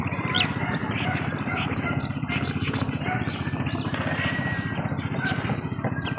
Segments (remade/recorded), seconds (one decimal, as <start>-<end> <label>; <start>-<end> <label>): 0.0-6.2 recorded